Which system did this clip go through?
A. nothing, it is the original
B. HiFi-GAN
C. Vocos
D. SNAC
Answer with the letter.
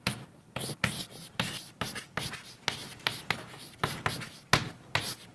A